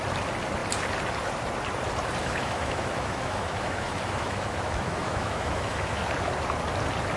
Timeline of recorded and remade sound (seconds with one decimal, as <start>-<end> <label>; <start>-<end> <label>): 0.0-2.2 recorded; 2.2-6.0 remade; 6.0-7.2 recorded